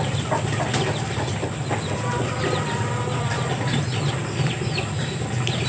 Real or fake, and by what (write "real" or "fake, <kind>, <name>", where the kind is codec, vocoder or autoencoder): real